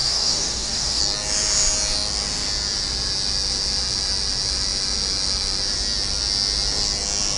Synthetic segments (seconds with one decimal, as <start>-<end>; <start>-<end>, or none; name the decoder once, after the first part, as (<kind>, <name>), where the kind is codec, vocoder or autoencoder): 0.0-1.0 (codec, DAC)